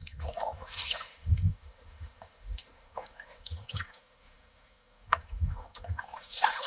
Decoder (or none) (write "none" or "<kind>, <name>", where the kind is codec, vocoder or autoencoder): autoencoder, DAC-VAE